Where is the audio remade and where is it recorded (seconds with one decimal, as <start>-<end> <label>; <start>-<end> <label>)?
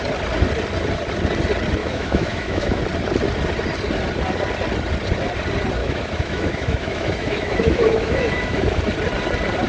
0.0-1.8 recorded; 1.8-2.8 remade; 2.8-5.8 recorded; 5.8-8.8 remade; 8.8-9.7 recorded